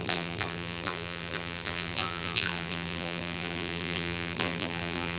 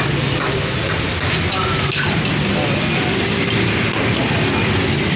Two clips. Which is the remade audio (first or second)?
first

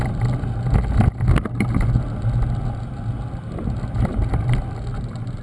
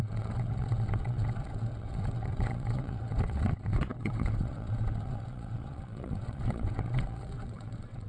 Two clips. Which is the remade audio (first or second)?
second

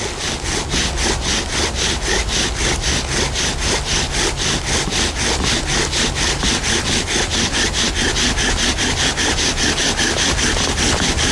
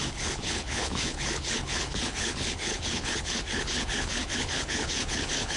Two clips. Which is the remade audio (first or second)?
second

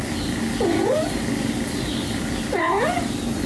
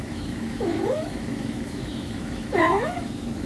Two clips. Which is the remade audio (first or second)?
second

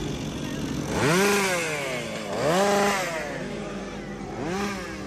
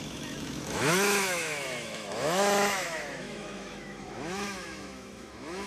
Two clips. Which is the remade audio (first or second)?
second